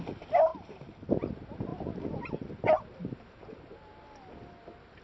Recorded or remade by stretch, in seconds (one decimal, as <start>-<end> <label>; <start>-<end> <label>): 0.0-3.0 recorded; 3.0-3.7 remade; 3.7-5.0 recorded